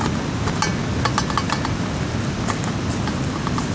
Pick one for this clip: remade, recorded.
recorded